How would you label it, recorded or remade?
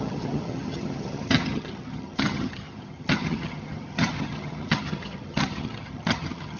remade